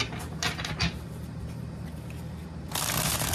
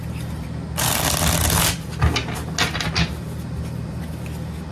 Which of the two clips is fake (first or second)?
first